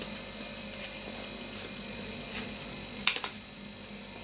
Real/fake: real